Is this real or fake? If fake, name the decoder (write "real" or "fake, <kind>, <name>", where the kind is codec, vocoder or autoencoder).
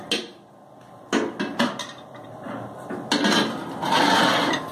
real